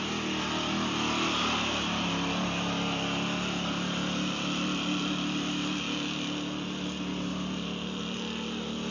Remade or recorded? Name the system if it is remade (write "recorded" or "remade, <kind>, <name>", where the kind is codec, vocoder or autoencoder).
recorded